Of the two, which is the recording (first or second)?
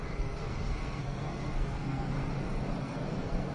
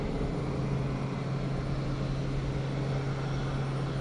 second